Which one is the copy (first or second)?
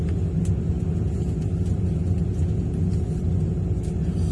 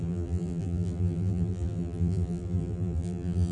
second